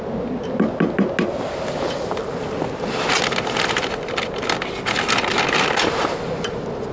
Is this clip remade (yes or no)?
no